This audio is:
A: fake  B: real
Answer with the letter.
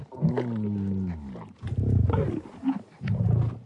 B